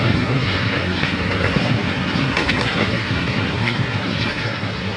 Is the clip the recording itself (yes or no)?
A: no